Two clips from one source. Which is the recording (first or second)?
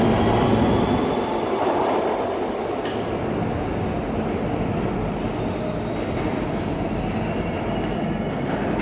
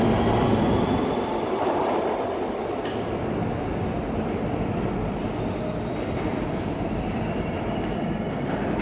first